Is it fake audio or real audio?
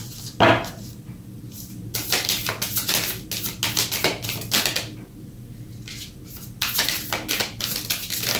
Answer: real